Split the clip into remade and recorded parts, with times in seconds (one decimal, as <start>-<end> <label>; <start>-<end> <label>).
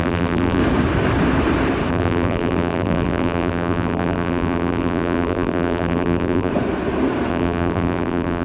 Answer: 0.0-0.6 remade; 0.6-1.9 recorded; 1.9-6.5 remade; 6.5-7.3 recorded; 7.3-8.4 remade